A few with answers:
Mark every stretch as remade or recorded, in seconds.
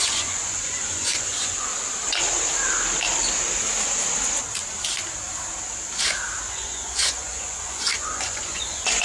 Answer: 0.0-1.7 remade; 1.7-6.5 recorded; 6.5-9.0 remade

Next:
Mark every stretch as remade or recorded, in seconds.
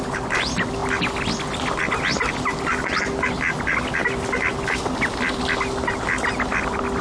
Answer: 0.0-7.0 recorded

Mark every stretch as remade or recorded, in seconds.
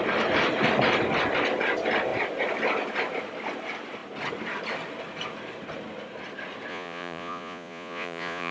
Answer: 0.0-6.7 recorded; 6.7-8.5 remade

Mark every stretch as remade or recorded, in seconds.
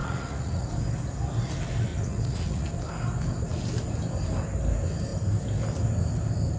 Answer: 0.0-0.7 remade; 0.7-1.9 recorded; 1.9-2.7 remade; 2.7-6.6 recorded